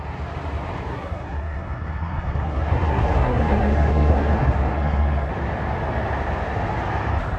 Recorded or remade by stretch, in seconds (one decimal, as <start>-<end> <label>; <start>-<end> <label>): 0.0-0.9 recorded; 0.9-5.3 remade; 5.3-7.4 recorded